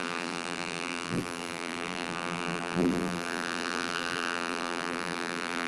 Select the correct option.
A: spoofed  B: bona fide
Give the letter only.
A